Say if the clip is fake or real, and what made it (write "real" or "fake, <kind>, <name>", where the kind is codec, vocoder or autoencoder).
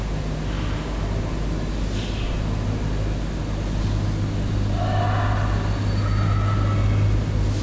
real